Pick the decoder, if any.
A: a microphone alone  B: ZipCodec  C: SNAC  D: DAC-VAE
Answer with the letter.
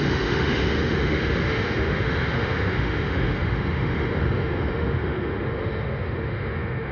D